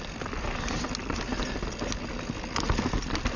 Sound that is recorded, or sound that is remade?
recorded